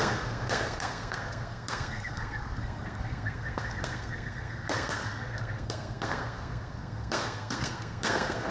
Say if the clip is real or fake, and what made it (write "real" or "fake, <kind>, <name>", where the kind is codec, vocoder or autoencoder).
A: fake, codec, SNAC